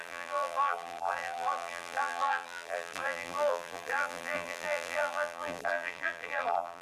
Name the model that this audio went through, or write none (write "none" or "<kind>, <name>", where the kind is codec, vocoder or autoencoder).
vocoder, BigVGAN v2